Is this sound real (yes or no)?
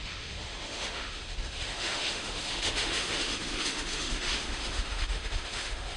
no